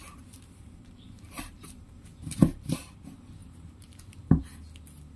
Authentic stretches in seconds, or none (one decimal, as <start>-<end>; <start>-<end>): 2.4-3.4; 4.5-5.2